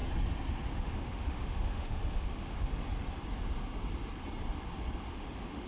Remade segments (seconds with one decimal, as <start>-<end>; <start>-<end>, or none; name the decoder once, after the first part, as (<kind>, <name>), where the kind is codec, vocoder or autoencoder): 0.8-2.7 (autoencoder, DAC-VAE); 5.1-5.7